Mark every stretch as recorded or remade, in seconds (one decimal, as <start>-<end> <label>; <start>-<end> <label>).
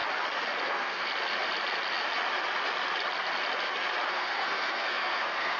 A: 0.0-0.7 recorded; 0.7-1.1 remade; 1.1-4.1 recorded; 4.1-5.6 remade